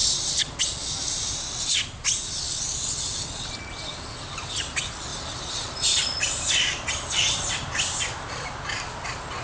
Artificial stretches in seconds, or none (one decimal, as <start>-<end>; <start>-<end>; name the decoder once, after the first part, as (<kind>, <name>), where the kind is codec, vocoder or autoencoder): none